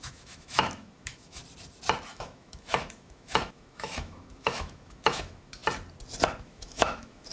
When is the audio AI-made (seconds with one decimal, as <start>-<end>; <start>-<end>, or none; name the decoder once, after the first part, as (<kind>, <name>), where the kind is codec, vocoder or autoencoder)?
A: 0.0-1.4 (autoencoder, DAC-VAE); 2.1-5.6; 6.4-7.3